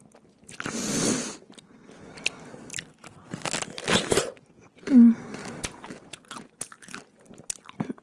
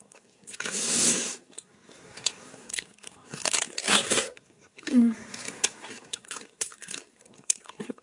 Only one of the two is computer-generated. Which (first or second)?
second